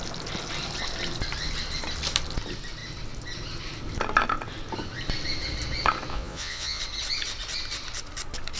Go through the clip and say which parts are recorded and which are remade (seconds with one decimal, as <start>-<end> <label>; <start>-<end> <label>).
0.0-6.1 recorded; 6.1-6.8 remade; 6.8-8.6 recorded